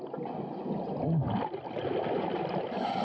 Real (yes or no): yes